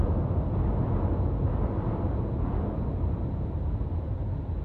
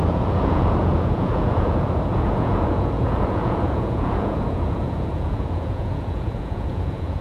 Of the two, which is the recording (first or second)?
first